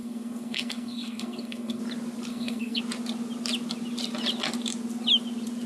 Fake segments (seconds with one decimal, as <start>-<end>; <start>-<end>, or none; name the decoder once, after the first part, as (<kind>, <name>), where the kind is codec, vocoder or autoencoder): 0.0-1.8 (codec, SNAC); 2.3-2.8